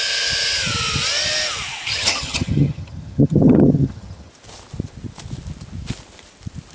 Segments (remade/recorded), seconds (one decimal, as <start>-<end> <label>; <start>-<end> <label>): 0.0-1.9 recorded; 1.9-4.3 remade; 4.3-6.7 recorded